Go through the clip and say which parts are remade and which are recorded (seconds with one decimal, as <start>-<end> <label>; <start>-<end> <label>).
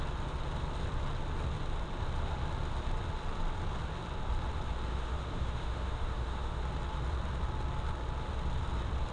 0.0-4.9 recorded; 4.9-6.6 remade; 6.6-9.1 recorded